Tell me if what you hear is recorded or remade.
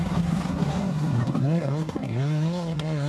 remade